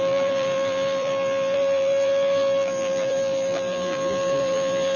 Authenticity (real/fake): fake